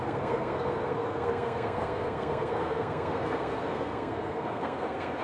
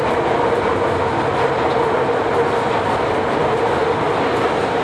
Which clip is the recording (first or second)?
second